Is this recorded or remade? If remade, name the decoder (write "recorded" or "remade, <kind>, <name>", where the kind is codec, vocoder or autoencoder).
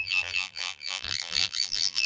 remade, vocoder, BigVGAN v2